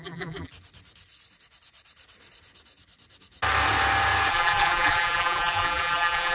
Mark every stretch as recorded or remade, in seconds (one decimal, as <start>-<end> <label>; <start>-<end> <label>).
0.0-0.5 remade; 0.5-4.3 recorded; 4.3-6.3 remade